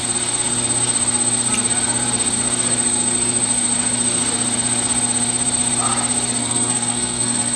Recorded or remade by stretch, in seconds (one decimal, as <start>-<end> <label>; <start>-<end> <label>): 0.0-6.4 recorded; 6.4-7.6 remade